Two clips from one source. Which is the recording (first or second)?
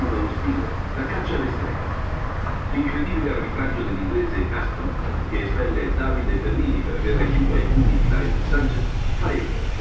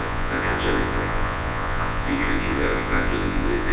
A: first